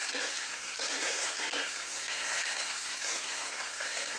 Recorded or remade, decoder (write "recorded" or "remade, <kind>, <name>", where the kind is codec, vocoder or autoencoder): remade, codec, SNAC